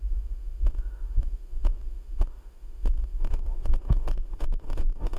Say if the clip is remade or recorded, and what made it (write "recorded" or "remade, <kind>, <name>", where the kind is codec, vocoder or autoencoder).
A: remade, autoencoder, DAC-VAE